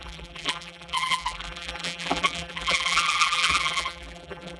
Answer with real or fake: fake